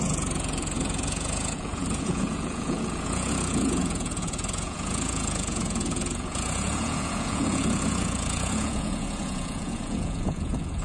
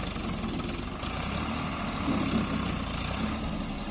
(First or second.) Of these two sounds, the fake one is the first